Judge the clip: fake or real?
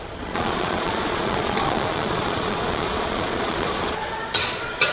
fake